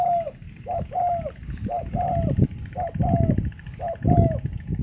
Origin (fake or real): real